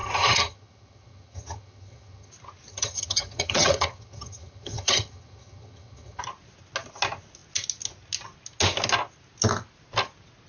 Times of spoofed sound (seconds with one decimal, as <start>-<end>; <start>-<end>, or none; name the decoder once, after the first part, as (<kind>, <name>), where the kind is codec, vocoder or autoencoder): 0.0-2.3 (vocoder, HiFi-GAN); 2.7-6.2